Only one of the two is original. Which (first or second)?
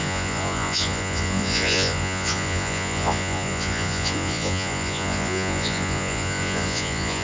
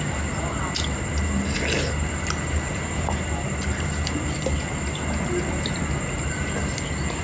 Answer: second